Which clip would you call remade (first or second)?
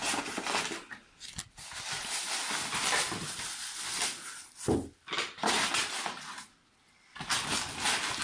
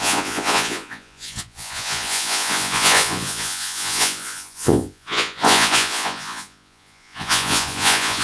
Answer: second